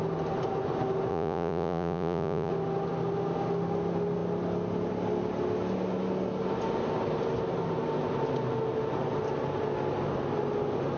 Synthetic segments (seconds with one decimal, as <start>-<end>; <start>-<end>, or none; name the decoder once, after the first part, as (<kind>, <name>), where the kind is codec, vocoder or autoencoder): 1.1-2.5 (vocoder, Vocos)